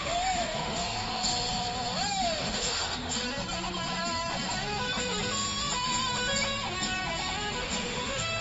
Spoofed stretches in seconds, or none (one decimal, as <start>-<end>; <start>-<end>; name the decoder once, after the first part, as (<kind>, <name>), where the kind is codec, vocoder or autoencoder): 0.0-1.3 (autoencoder, DAC-VAE); 2.4-3.2; 7.6-8.4